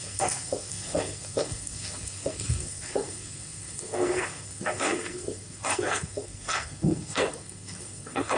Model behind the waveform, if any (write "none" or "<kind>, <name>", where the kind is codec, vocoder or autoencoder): codec, SNAC